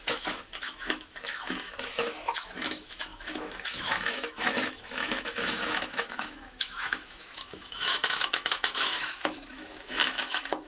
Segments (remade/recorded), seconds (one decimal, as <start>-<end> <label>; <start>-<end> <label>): 0.0-10.7 remade